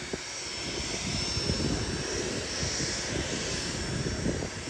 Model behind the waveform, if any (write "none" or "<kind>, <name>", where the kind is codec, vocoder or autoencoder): none